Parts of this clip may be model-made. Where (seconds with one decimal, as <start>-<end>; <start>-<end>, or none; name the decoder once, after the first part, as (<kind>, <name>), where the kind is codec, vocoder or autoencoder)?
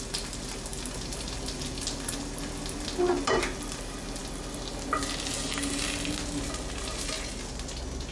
none